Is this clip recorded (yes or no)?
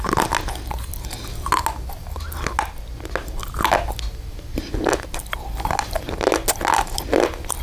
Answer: yes